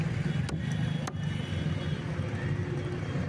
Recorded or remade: recorded